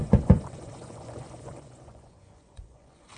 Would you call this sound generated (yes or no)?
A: yes